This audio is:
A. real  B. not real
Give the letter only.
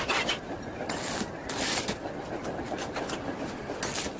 A